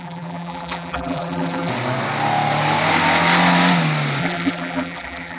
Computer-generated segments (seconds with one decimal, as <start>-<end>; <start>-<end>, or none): 0.0-1.7; 4.2-5.4